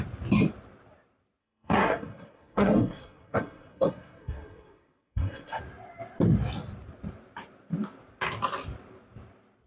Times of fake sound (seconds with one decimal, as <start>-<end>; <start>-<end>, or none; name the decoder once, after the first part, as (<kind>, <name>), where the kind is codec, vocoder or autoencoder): 1.4-5.6 (codec, SNAC)